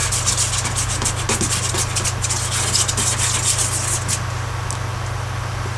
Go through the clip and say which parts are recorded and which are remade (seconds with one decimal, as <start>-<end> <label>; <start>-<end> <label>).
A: 0.0-5.8 recorded